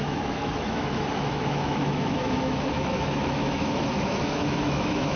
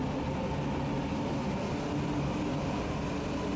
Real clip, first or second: second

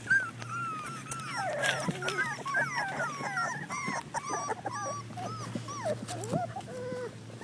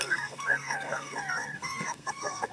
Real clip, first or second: first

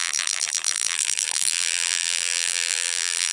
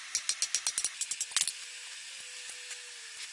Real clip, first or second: second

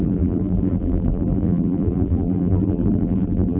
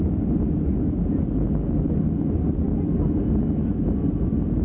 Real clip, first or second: second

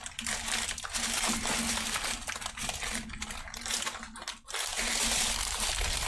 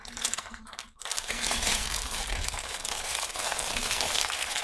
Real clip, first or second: first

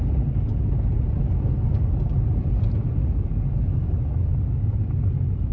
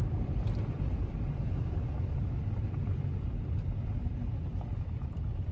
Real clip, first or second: first